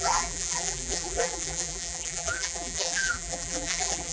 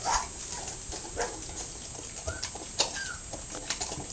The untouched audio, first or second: second